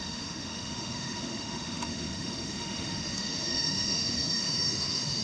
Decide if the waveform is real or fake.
fake